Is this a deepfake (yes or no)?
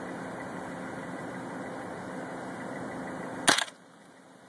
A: no